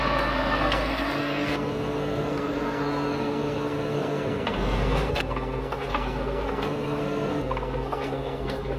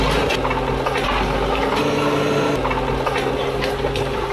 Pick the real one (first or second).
second